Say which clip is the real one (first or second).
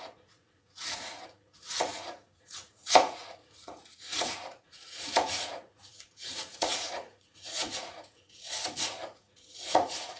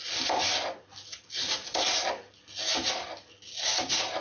second